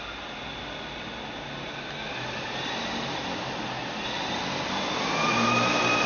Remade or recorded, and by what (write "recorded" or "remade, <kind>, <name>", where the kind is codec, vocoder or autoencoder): recorded